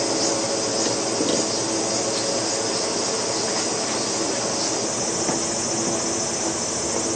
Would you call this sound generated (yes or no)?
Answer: no